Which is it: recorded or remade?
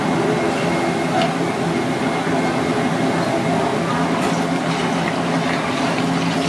recorded